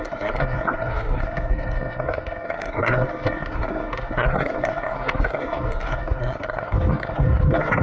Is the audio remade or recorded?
remade